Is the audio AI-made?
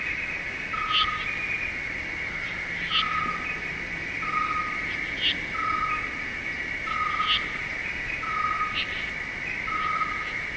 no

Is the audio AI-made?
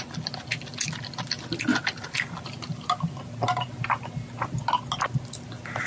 no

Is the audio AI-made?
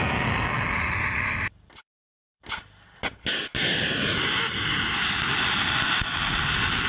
no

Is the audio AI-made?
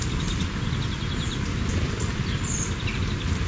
no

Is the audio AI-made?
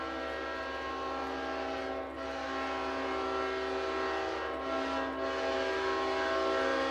no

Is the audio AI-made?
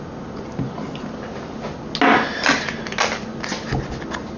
no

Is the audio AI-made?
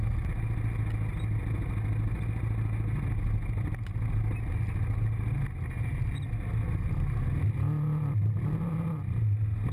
no